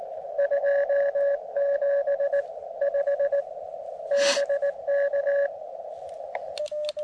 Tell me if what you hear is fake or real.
real